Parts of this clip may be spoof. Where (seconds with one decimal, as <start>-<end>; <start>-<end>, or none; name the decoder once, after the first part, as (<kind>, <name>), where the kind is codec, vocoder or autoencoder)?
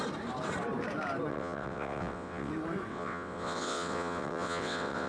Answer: 1.3-2.5 (vocoder, WaveNeXt); 2.9-5.1